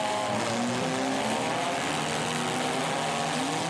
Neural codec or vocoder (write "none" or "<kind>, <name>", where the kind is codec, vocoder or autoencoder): none